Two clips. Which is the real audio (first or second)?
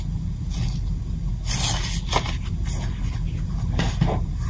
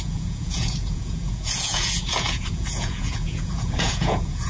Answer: first